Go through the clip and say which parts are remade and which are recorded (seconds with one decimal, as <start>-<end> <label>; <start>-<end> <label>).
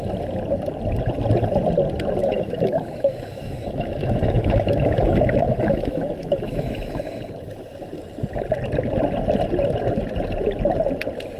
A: 0.0-2.2 recorded; 2.2-7.2 remade; 7.2-11.4 recorded